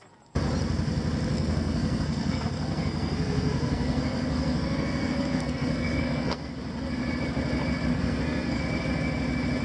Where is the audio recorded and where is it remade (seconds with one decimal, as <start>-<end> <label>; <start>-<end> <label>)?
0.0-1.3 recorded; 1.3-6.5 remade; 6.5-7.9 recorded; 7.9-8.6 remade; 8.6-9.6 recorded